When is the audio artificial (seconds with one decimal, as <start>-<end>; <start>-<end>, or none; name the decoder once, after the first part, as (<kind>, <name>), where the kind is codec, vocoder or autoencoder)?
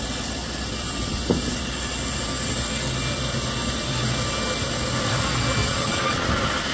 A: 5.6-6.3 (vocoder, Vocos)